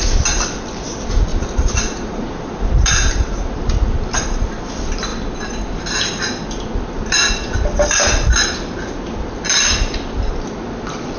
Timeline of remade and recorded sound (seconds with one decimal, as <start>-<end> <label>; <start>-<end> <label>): 0.0-1.3 recorded; 1.3-3.5 remade; 3.5-11.2 recorded